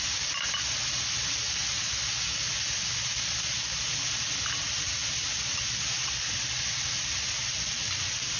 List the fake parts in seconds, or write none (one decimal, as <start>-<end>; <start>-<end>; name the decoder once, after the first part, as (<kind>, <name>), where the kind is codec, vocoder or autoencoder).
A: none